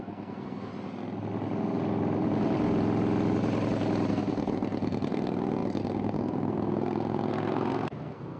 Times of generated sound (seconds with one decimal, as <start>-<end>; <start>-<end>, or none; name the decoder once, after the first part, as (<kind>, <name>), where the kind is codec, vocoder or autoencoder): 0.0-0.7 (codec, SNAC); 4.1-8.4